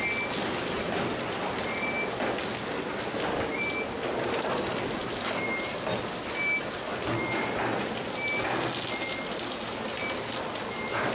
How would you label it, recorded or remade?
recorded